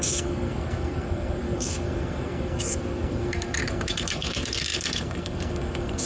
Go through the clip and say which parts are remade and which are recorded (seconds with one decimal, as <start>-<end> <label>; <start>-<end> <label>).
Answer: 0.0-6.1 remade